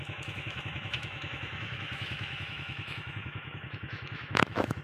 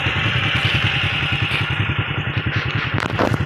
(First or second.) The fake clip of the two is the first